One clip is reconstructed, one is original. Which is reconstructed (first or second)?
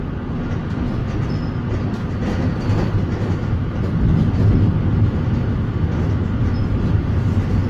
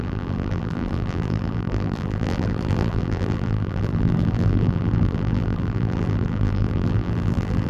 second